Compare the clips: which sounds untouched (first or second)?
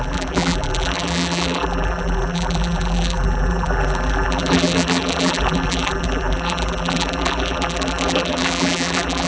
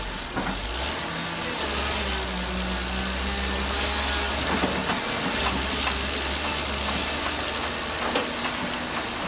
second